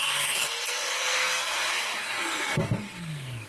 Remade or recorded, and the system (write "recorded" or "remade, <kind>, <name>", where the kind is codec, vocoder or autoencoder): remade, codec, SNAC